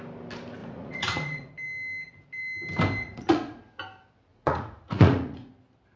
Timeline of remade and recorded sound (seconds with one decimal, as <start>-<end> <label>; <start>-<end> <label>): 0.0-0.6 recorded; 0.6-1.5 remade; 1.5-3.0 recorded; 3.0-3.6 remade; 3.6-4.3 recorded; 4.3-5.5 remade; 5.5-6.0 recorded